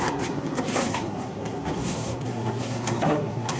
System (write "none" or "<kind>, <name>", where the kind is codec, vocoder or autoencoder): codec, SNAC